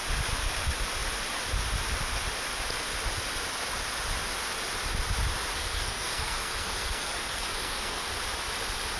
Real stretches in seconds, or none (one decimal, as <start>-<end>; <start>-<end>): 0.0-5.5; 8.1-9.0